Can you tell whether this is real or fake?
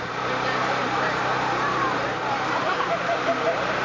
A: fake